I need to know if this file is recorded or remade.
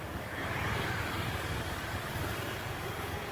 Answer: remade